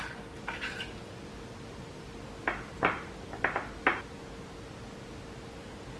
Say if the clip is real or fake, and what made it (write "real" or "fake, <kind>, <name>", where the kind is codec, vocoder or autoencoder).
real